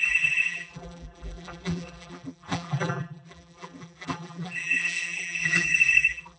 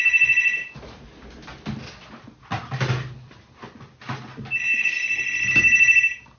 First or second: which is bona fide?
second